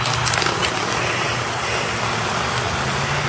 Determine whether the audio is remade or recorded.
recorded